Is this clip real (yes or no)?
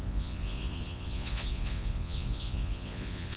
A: no